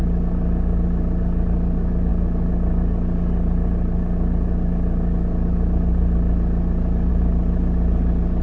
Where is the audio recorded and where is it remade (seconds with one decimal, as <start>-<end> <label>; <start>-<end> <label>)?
0.0-8.4 recorded